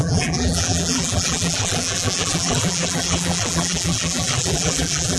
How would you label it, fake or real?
fake